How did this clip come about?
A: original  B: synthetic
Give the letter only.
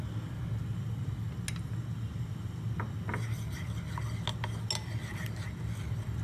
A